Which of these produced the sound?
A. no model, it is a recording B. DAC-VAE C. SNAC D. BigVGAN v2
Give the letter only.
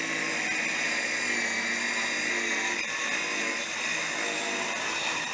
A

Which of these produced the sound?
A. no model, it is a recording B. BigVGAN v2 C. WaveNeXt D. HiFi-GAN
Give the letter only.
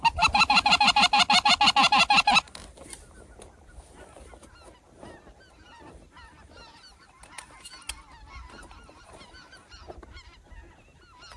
A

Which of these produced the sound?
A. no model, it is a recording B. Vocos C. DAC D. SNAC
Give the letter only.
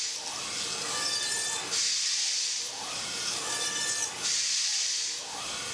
A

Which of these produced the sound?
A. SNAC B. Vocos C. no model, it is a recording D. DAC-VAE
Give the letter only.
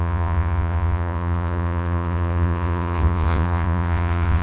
B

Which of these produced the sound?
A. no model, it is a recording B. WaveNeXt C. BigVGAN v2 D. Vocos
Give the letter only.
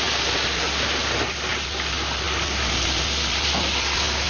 A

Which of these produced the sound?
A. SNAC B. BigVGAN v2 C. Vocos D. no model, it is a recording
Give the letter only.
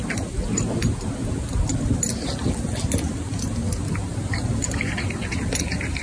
D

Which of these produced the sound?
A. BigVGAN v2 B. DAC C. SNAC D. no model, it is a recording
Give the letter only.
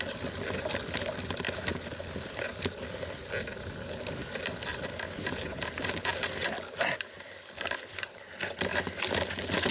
D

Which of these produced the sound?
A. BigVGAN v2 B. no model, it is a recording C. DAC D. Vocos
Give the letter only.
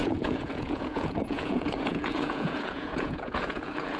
D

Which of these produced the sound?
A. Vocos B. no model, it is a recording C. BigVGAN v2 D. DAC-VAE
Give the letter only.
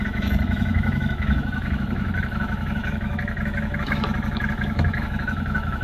D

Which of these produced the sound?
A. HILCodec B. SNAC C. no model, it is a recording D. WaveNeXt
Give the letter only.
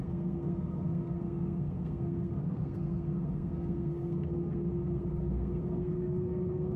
B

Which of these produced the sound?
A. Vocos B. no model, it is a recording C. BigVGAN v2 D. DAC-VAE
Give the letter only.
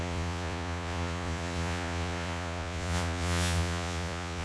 A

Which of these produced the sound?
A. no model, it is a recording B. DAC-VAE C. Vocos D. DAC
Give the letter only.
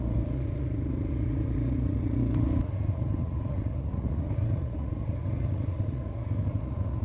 C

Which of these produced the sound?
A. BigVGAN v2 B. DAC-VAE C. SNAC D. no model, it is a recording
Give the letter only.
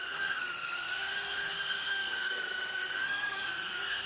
C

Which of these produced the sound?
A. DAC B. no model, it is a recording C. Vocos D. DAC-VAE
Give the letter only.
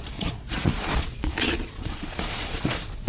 C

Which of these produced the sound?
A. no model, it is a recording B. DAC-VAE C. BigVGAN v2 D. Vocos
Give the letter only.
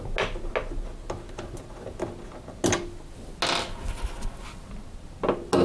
A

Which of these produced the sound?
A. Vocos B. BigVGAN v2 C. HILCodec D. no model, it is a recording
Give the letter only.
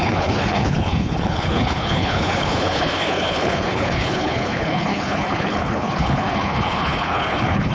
C